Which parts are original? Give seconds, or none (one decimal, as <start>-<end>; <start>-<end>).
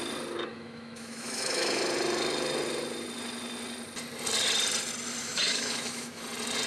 0.0-0.5; 1.8-5.2; 6.2-6.7